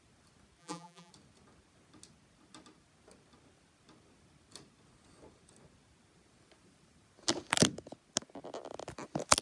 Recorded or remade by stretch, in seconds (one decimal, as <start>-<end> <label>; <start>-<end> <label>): 0.0-0.6 recorded; 0.6-1.1 remade; 1.1-9.4 recorded